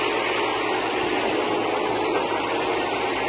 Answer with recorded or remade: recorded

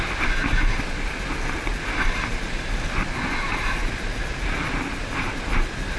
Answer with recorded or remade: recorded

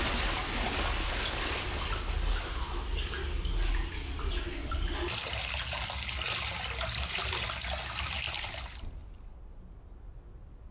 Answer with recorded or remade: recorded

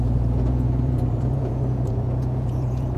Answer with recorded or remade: remade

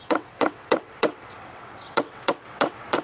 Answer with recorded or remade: remade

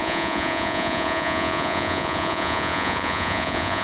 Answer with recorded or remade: remade